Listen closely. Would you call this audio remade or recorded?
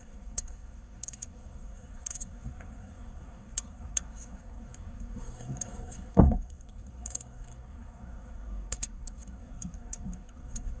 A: remade